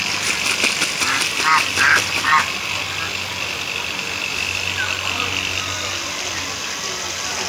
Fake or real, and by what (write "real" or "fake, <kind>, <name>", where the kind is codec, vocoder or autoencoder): real